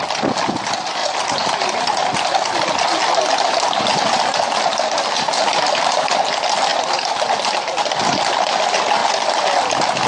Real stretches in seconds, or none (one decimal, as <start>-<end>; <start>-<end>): 0.0-10.1